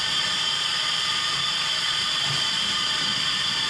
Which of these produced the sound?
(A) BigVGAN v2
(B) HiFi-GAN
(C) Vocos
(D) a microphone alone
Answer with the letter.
A